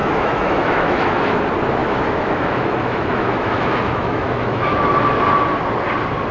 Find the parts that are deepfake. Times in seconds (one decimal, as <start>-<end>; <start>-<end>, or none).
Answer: 0.0-1.4; 1.8-4.9